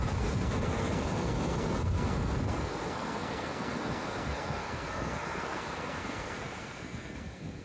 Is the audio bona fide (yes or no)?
no